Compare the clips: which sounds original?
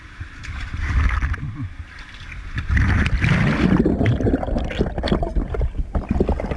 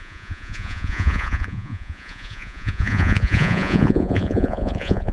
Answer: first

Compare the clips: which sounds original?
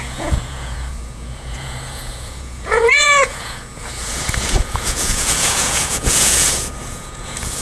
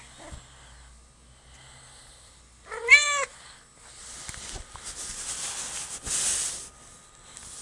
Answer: second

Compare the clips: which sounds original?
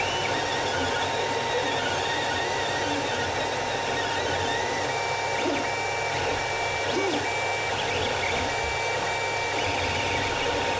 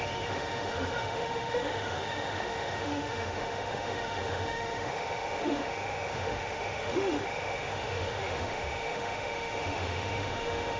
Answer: first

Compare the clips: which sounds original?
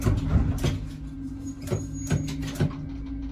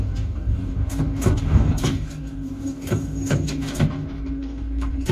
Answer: first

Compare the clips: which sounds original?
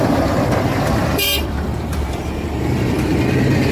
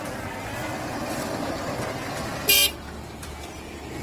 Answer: second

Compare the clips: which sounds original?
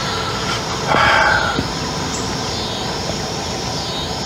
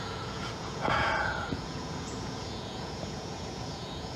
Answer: first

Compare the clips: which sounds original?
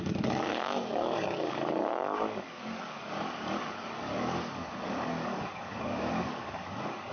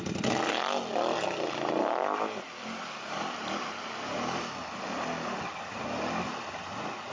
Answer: second